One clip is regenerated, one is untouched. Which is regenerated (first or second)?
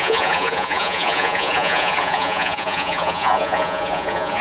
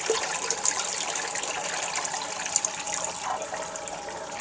first